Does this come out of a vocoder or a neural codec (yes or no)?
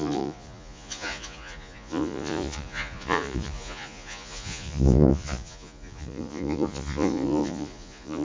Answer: yes